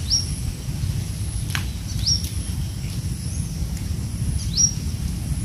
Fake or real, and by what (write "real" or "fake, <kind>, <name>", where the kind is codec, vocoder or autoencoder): real